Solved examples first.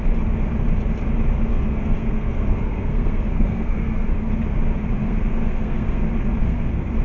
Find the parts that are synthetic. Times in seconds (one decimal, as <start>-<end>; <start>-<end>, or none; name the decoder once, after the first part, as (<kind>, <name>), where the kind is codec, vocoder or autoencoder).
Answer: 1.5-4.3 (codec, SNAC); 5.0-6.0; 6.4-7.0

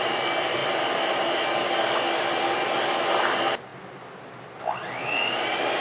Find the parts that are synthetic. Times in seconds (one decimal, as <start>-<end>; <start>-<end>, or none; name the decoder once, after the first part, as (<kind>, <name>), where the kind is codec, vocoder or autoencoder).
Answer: none

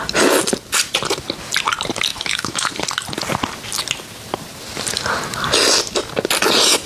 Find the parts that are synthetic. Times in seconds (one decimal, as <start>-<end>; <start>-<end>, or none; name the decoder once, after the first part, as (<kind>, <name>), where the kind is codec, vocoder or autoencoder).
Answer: 2.1-2.7 (autoencoder, DAC-VAE)